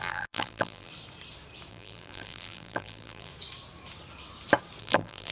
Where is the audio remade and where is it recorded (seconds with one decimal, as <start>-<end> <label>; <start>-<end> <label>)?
0.0-0.9 remade; 0.9-1.7 recorded; 1.7-3.3 remade; 3.3-4.8 recorded; 4.8-5.3 remade